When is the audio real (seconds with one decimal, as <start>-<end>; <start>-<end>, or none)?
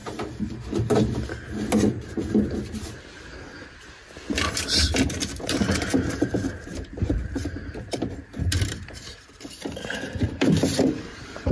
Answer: 0.0-1.9; 4.0-5.3